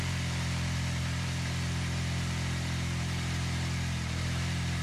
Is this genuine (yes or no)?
no